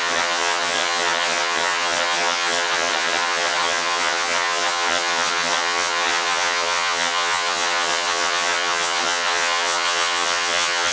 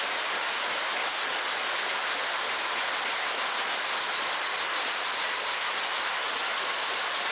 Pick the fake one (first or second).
first